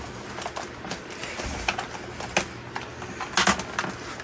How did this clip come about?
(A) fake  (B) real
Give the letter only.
B